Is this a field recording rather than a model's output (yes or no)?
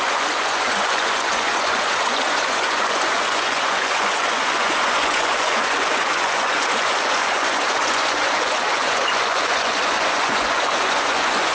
no